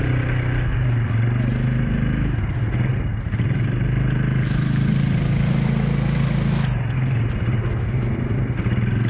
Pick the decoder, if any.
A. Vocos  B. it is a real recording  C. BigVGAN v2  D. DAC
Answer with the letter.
B